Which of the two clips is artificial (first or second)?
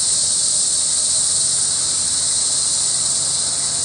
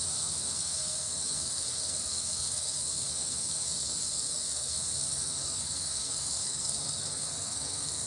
second